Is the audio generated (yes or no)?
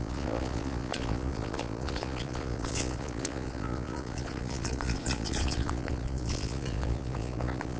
yes